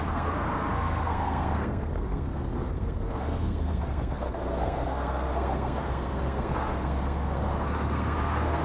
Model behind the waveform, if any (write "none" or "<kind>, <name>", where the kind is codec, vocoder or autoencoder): codec, SNAC